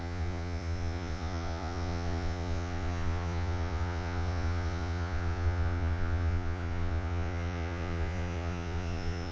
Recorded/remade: remade